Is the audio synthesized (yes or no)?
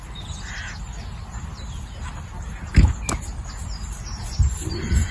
no